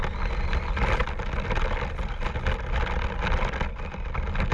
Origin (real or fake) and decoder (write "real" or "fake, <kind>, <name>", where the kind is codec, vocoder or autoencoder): real